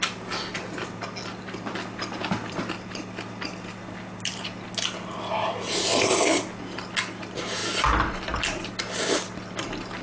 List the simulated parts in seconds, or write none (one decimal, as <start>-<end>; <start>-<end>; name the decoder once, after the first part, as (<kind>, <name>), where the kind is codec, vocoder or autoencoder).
none